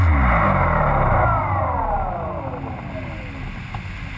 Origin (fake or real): real